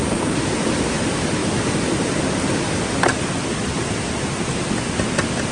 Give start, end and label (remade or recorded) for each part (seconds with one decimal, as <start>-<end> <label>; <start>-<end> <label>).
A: 0.0-0.8 remade; 0.8-5.5 recorded